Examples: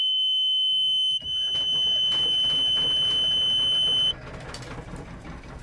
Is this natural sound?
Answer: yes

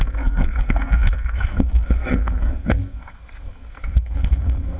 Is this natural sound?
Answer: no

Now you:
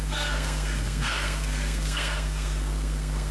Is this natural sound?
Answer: no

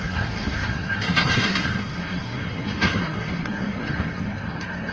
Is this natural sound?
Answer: no